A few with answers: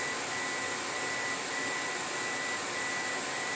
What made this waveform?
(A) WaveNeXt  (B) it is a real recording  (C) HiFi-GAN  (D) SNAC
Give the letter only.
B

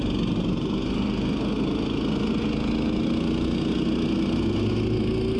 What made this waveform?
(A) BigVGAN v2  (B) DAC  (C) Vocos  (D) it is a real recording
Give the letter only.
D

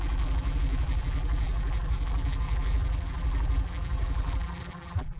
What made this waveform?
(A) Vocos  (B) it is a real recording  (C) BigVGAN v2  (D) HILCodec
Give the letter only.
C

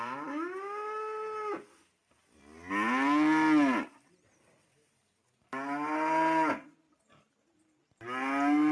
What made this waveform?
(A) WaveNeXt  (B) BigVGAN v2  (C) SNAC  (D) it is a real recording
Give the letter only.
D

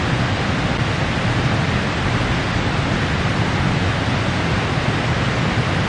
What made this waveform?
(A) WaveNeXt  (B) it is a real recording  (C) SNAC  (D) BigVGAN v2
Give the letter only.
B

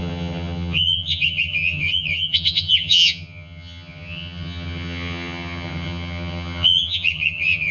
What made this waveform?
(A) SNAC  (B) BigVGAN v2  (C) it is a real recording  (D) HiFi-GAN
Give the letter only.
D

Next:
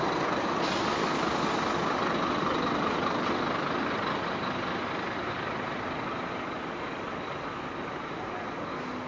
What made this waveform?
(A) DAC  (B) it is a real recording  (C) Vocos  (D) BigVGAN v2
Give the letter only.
B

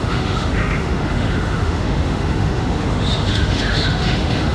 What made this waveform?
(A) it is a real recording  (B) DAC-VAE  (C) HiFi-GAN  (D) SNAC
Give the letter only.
B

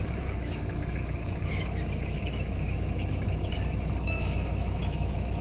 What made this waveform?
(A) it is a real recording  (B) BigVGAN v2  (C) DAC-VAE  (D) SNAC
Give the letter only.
C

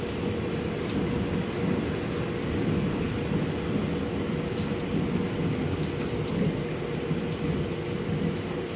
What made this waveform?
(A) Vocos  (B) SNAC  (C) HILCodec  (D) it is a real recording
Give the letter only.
D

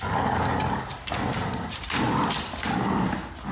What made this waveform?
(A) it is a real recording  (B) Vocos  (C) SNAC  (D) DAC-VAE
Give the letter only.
A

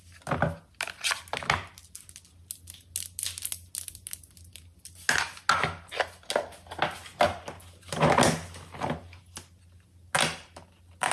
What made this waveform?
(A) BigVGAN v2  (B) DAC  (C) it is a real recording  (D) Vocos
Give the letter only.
C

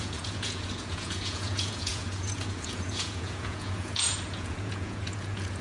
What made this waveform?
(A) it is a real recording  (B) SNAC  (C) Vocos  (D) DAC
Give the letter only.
C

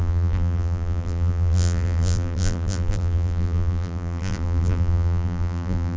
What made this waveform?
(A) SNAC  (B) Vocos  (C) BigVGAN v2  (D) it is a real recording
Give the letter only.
C